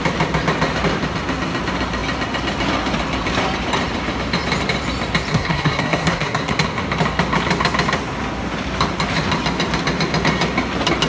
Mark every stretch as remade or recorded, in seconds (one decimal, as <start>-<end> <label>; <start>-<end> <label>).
0.0-5.3 recorded; 5.3-6.5 remade; 6.5-11.1 recorded